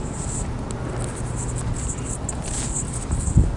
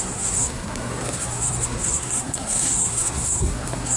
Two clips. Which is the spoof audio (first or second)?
second